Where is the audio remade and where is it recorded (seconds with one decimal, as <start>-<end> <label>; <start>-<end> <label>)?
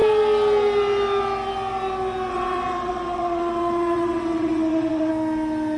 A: 0.0-2.3 recorded; 2.3-5.1 remade; 5.1-5.8 recorded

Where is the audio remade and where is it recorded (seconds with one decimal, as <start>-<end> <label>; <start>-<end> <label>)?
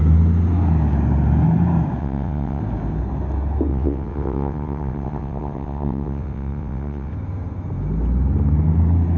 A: 0.0-2.0 recorded; 2.0-2.6 remade; 2.6-3.7 recorded; 3.7-7.1 remade; 7.1-9.2 recorded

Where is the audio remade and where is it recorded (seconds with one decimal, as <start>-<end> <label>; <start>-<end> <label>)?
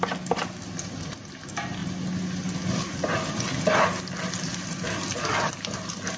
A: 0.0-6.2 recorded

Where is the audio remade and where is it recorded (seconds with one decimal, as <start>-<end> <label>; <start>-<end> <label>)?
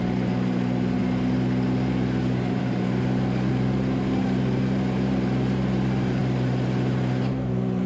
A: 0.0-7.9 recorded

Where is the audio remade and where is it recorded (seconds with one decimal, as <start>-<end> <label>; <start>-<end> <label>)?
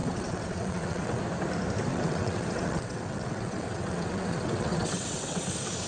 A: 0.0-1.2 remade; 1.2-1.9 recorded; 1.9-5.4 remade; 5.4-5.9 recorded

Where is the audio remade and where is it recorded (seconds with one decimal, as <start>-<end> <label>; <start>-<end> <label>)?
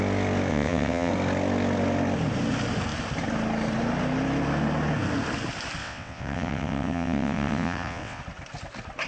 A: 0.0-0.5 recorded; 0.5-1.1 remade; 1.1-5.8 recorded; 5.8-8.2 remade; 8.2-9.1 recorded